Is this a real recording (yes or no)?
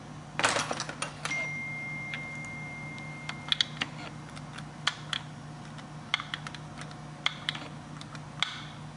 yes